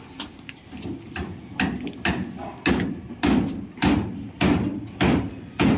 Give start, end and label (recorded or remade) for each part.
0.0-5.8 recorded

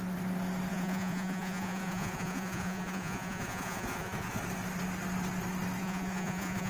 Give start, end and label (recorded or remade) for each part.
0.0-0.7 recorded; 0.7-4.4 remade; 4.4-5.8 recorded; 5.8-6.7 remade

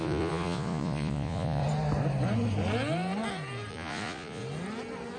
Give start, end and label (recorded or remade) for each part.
0.0-1.6 remade; 1.6-3.7 recorded; 3.7-4.4 remade; 4.4-5.2 recorded

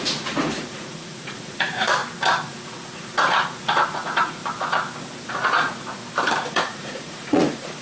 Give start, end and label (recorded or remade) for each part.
0.0-2.0 remade; 2.0-2.5 recorded; 2.5-4.4 remade; 4.4-5.3 recorded; 5.3-6.0 remade; 6.0-6.5 recorded; 6.5-7.8 remade